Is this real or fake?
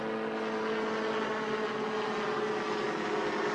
real